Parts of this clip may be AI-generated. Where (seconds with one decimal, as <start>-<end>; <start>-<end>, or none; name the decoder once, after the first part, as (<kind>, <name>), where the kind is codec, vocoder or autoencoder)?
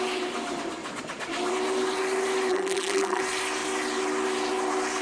2.5-3.2 (vocoder, BigVGAN v2)